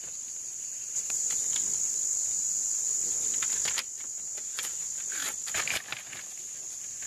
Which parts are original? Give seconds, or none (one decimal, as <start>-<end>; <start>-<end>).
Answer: 0.0-7.1